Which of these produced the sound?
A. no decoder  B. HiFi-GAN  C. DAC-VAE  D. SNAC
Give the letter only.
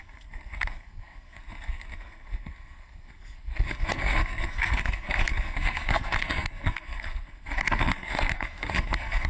D